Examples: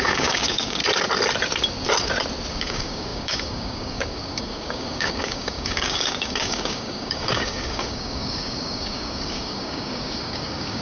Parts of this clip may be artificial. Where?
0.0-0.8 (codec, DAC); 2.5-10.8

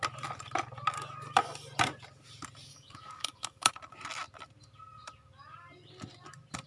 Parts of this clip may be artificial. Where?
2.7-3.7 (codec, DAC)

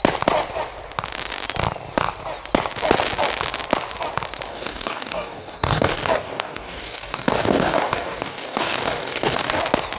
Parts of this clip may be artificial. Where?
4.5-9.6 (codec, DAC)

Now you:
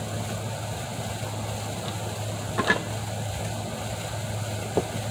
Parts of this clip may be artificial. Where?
none

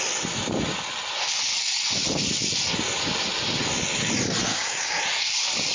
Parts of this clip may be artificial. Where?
4.5-5.0 (codec, DAC)